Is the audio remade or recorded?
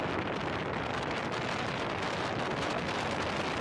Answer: recorded